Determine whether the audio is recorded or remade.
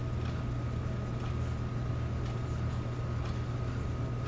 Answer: recorded